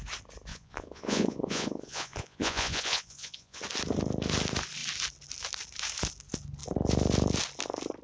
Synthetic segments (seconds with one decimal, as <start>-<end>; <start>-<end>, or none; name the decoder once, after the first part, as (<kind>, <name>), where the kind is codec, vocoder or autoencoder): 0.5-3.6 (vocoder, Vocos)